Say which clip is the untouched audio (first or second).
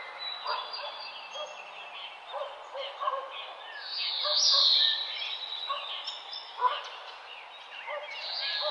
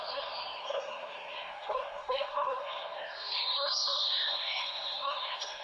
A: first